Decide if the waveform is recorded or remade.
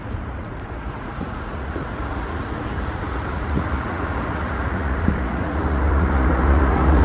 remade